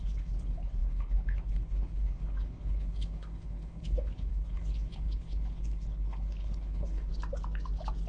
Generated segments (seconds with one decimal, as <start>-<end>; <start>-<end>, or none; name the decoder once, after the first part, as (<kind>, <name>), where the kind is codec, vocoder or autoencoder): 0.0-7.1 (codec, HILCodec)